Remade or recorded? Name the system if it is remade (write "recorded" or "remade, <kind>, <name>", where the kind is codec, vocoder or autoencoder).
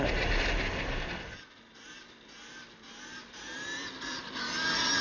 recorded